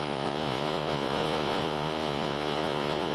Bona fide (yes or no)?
no